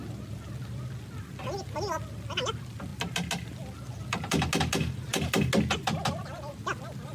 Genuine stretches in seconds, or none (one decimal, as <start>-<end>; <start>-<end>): 0.0-7.1